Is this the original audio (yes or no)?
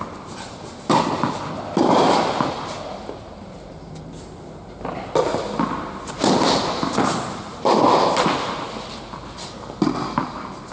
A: yes